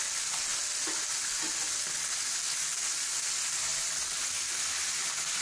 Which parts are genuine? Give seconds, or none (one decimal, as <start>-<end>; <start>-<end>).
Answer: 0.0-5.4